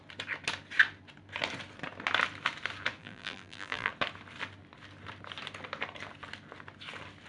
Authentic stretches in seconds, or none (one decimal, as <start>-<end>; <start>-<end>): 0.0-3.0; 3.9-7.3